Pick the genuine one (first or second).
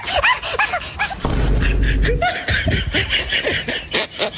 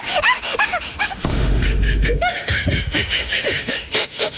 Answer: first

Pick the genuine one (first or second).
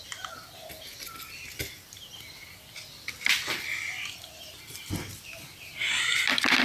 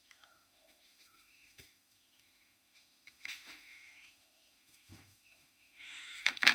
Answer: first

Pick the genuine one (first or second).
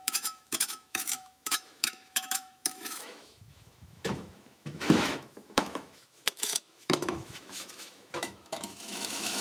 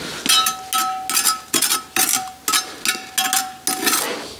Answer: second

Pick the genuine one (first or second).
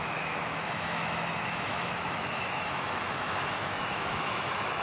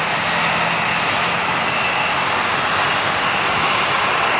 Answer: second